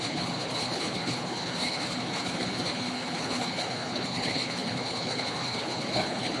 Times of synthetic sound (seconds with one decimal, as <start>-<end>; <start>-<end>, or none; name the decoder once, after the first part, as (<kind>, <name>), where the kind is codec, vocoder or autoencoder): 0.0-6.4 (codec, HILCodec)